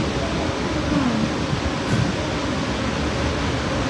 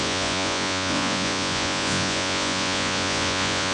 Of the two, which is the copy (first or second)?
second